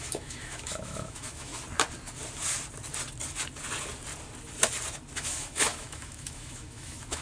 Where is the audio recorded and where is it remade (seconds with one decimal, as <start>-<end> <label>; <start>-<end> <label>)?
0.0-1.5 remade; 1.5-5.1 recorded; 5.1-7.2 remade